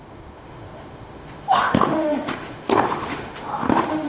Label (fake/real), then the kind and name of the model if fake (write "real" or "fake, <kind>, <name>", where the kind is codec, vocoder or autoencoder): fake, autoencoder, DAC-VAE